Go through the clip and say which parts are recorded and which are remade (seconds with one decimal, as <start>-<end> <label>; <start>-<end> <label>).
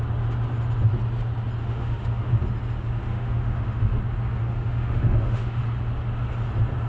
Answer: 0.0-1.6 recorded; 1.6-2.3 remade; 2.3-3.1 recorded; 3.1-4.0 remade; 4.0-4.4 recorded; 4.4-5.6 remade; 5.6-6.9 recorded